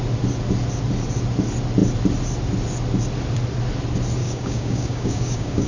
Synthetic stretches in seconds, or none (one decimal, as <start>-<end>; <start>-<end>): 4.2-5.7